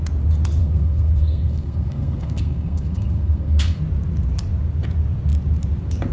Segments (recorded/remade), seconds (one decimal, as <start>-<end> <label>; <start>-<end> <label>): 0.0-0.6 recorded; 0.6-3.8 remade; 3.8-6.1 recorded